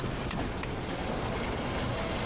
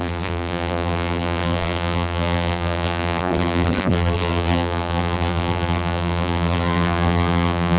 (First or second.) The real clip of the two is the first